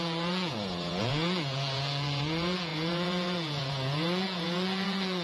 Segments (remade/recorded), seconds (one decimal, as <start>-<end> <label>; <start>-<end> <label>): 0.0-5.2 remade